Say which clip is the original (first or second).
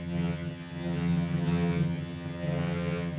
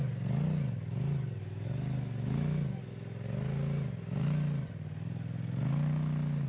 second